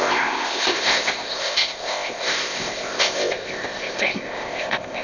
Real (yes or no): no